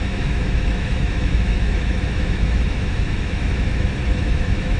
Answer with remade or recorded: remade